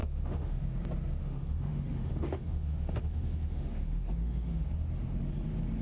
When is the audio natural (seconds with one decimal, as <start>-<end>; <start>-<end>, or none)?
0.6-1.2; 4.7-5.8